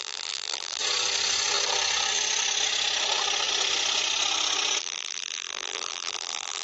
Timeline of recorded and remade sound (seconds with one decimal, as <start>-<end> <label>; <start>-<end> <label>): 0.0-0.8 remade; 0.8-4.8 recorded; 4.8-6.6 remade